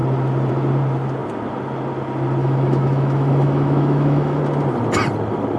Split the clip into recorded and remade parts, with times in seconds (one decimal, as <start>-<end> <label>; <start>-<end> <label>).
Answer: 0.0-2.4 recorded; 2.4-4.4 remade; 4.4-5.6 recorded